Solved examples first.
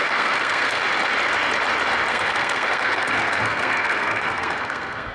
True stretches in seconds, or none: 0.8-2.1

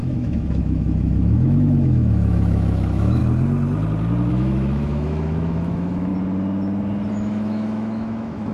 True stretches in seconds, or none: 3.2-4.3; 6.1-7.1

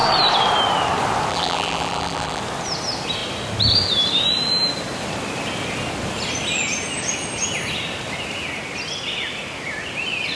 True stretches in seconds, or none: 0.0-1.3; 2.4-10.4